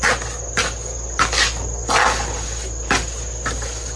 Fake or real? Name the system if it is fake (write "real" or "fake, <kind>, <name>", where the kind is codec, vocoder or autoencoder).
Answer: real